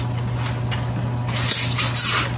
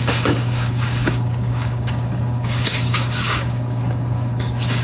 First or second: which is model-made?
second